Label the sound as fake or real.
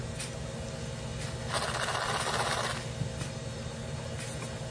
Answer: real